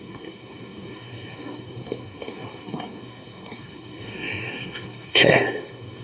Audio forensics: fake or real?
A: fake